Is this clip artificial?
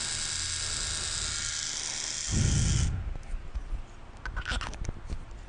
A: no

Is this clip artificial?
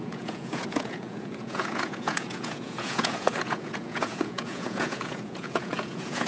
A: yes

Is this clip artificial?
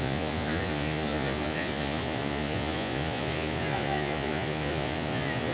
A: yes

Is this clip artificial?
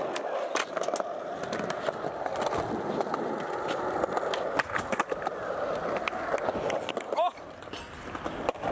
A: no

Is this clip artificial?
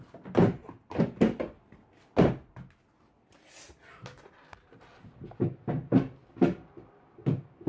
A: no